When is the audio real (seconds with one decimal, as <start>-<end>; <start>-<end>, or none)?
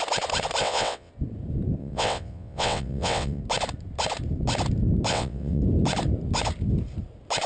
0.0-0.6; 1.1-1.8; 3.4-5.1; 5.6-7.5